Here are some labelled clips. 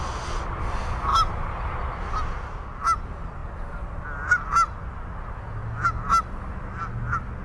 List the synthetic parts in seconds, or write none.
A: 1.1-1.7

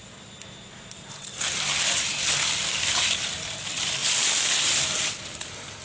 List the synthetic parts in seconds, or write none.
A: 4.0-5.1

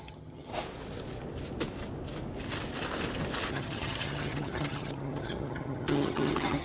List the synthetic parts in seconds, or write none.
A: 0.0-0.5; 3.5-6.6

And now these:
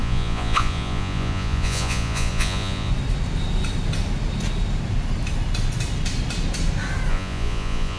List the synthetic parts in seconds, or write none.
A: 0.0-2.9; 7.1-8.0

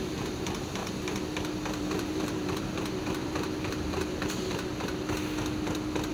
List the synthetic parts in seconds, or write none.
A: 0.0-0.8; 1.8-4.7

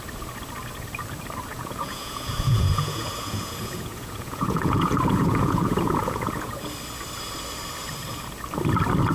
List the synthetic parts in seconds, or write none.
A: 1.5-6.5

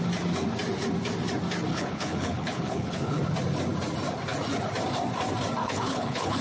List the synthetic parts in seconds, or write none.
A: 1.7-3.2; 5.6-6.4

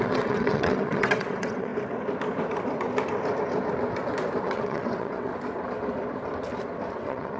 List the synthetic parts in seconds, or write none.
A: 0.0-1.7; 4.4-5.3; 6.9-7.4